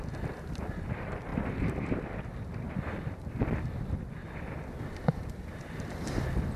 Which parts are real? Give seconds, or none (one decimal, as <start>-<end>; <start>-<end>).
1.3-5.1